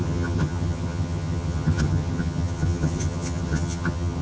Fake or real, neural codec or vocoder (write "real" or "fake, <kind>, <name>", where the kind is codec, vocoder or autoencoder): fake, vocoder, HiFi-GAN